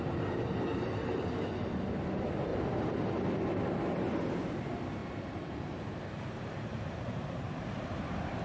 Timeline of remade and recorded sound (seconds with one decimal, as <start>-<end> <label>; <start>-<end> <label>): 0.0-2.5 recorded; 2.5-3.4 remade; 3.4-5.0 recorded; 5.0-8.0 remade; 8.0-8.4 recorded